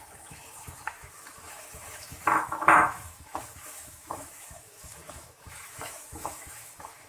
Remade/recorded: remade